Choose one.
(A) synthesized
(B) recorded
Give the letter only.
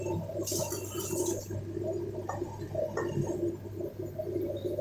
B